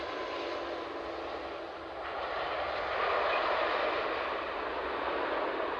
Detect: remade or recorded recorded